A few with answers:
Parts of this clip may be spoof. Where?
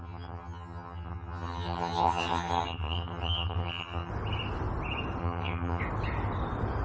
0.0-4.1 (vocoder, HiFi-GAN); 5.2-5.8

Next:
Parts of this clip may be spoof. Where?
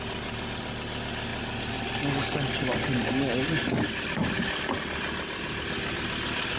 none